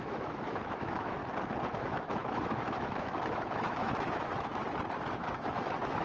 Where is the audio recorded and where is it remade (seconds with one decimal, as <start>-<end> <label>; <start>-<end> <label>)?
0.0-1.2 remade; 1.2-1.7 recorded; 1.7-4.6 remade; 4.6-5.1 recorded; 5.1-6.0 remade